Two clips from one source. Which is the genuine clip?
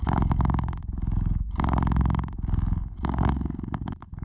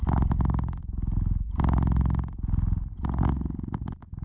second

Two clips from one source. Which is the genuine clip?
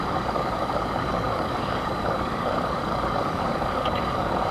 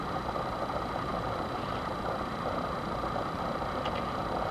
second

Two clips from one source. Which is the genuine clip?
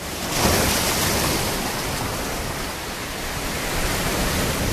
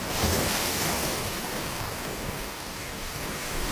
first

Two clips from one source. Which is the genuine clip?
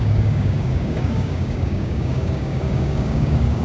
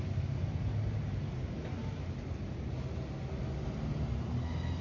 second